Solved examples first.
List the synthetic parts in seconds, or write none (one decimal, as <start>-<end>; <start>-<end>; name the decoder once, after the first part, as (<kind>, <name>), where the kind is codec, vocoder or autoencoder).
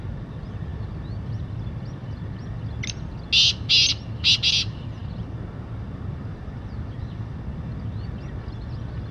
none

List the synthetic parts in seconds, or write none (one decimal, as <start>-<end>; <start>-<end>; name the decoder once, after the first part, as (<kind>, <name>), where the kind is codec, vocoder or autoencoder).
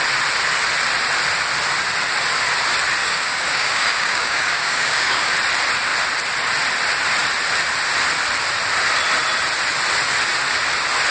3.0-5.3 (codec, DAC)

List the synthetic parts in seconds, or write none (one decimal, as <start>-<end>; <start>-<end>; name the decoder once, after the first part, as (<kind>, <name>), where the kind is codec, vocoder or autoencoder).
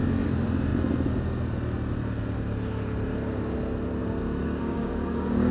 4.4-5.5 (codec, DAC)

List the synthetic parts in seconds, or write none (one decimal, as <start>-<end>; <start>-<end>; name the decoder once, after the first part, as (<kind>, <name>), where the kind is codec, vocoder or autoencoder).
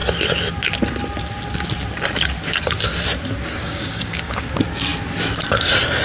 3.6-4.5 (codec, DAC)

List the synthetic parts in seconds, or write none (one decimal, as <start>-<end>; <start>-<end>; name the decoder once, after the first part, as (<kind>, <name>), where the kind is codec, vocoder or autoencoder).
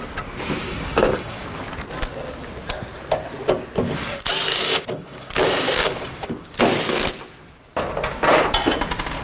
0.6-1.7 (codec, DAC); 4.6-5.3; 5.8-6.6